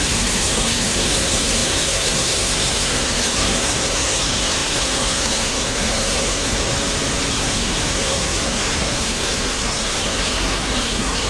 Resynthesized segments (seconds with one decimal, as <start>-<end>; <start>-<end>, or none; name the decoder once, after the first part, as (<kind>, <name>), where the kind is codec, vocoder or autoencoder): 0.0-6.7 (codec, SNAC); 7.3-11.3